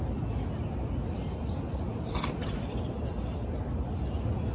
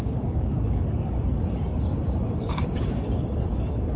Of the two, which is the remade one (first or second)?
second